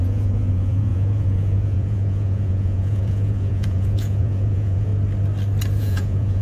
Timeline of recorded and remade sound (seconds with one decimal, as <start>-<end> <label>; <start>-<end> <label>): 0.0-4.9 remade; 4.9-5.8 recorded; 5.8-6.4 remade